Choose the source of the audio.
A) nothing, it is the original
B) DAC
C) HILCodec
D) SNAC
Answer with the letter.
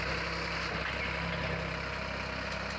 A